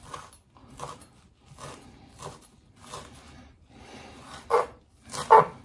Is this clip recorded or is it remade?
recorded